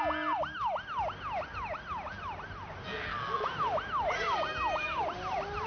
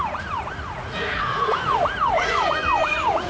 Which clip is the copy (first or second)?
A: second